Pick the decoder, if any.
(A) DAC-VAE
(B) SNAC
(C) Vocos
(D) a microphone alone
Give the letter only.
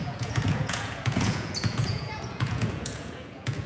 C